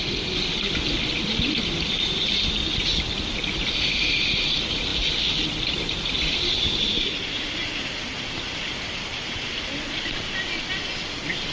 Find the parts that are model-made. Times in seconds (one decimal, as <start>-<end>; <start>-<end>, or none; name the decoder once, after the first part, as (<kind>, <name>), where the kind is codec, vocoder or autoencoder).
none